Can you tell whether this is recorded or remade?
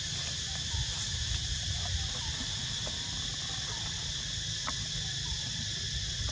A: recorded